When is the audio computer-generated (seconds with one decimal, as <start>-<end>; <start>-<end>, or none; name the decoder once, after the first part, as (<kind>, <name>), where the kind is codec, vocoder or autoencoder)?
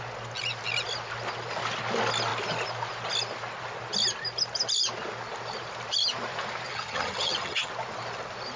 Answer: 6.7-7.7 (vocoder, HiFi-GAN)